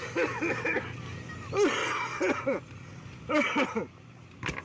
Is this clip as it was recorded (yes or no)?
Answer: yes